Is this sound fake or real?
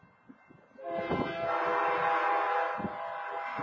real